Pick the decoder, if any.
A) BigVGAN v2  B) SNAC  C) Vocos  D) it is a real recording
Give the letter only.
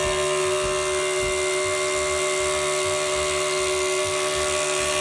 D